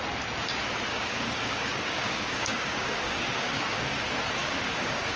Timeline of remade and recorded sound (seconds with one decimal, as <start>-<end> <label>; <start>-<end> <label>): 0.0-0.9 recorded; 0.9-4.0 remade; 4.0-4.4 recorded; 4.4-5.2 remade